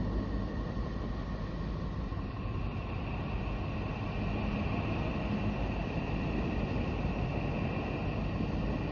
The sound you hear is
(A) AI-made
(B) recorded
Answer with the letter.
B